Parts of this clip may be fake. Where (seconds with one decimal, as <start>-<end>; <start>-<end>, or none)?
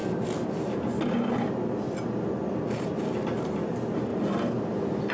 none